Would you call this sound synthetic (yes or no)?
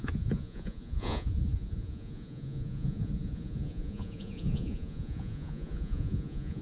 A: yes